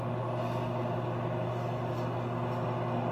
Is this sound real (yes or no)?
yes